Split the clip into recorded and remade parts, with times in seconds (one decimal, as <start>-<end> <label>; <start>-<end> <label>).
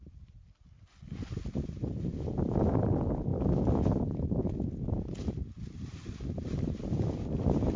0.0-7.8 recorded